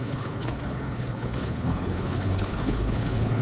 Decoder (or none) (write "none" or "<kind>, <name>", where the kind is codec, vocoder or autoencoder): codec, HILCodec